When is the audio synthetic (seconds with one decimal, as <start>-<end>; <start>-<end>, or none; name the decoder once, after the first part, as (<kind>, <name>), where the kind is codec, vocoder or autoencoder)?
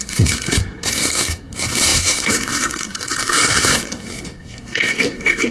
0.0-5.5 (codec, SNAC)